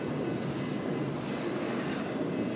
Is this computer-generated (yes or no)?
no